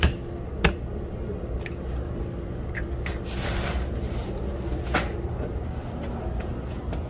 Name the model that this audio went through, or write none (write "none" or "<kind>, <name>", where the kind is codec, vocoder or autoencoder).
none